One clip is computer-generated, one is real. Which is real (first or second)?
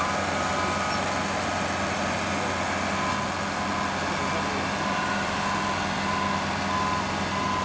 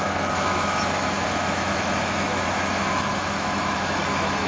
first